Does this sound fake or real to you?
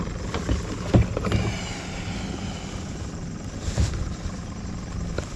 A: real